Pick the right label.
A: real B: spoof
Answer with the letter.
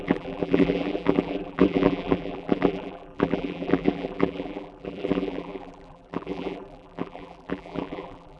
B